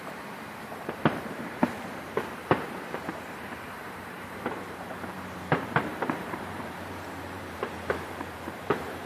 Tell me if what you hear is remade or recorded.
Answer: remade